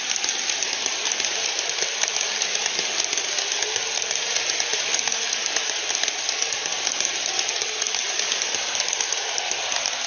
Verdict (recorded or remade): recorded